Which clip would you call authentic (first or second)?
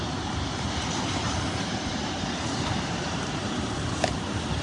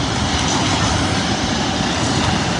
second